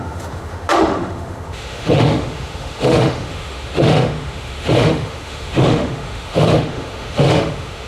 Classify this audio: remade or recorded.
remade